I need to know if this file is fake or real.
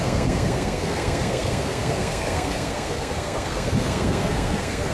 fake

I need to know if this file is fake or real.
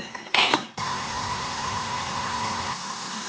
fake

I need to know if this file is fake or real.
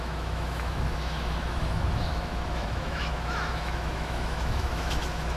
fake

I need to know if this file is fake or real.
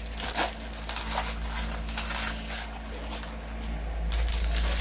real